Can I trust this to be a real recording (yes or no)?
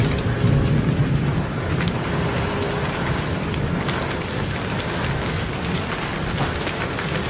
yes